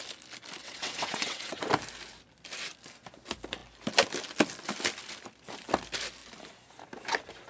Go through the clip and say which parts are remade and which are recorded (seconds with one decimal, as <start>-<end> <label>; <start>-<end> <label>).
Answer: 0.0-0.6 recorded; 0.6-1.7 remade; 1.7-7.5 recorded